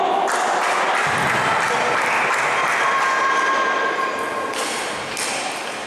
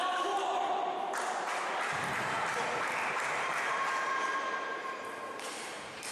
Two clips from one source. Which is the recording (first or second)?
first